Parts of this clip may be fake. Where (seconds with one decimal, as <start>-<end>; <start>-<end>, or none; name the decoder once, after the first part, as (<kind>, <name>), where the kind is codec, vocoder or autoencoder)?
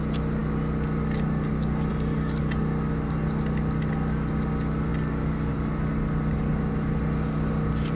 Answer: 1.9-2.4 (codec, DAC)